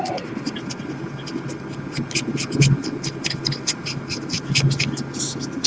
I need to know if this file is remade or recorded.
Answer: recorded